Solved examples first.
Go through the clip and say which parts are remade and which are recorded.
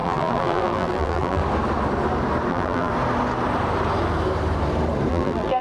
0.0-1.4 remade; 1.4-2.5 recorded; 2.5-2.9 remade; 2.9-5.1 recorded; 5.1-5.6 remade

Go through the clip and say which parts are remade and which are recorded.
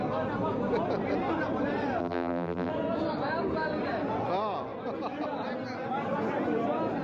0.0-2.0 recorded; 2.0-2.7 remade; 2.7-7.0 recorded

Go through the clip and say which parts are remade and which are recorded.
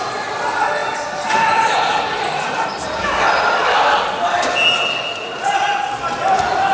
0.0-6.7 recorded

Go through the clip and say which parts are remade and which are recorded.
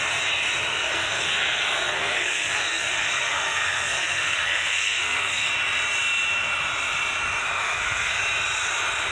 0.0-0.7 recorded; 0.7-5.5 remade; 5.5-7.6 recorded; 7.6-8.2 remade; 8.2-9.1 recorded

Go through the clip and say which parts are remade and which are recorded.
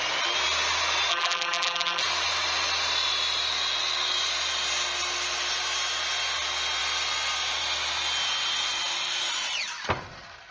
0.0-1.1 recorded; 1.1-2.0 remade; 2.0-10.5 recorded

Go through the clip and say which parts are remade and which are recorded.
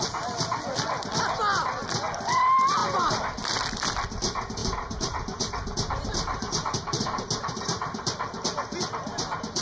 0.0-4.6 recorded; 4.6-8.8 remade; 8.8-9.6 recorded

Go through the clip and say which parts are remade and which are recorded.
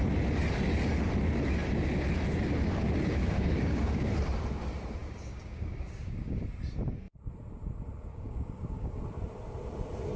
0.0-2.8 recorded; 2.8-4.1 remade; 4.1-5.0 recorded; 5.0-6.4 remade; 6.4-8.1 recorded; 8.1-9.0 remade; 9.0-10.2 recorded